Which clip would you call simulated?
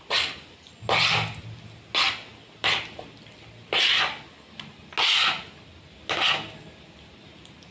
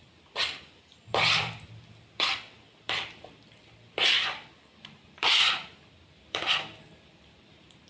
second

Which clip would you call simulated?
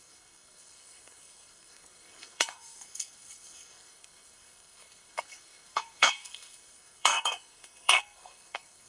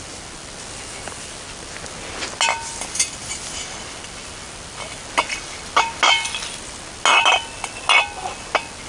first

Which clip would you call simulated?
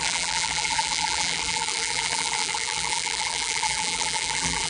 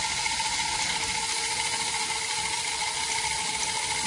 first